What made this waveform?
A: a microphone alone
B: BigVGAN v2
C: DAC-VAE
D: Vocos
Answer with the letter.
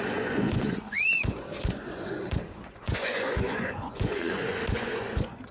D